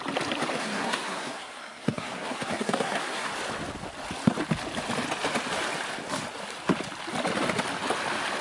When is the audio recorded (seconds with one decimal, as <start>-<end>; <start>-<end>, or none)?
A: 0.0-0.6; 3.3-8.4